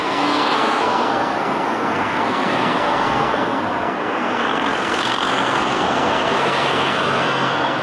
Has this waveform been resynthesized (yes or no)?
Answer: yes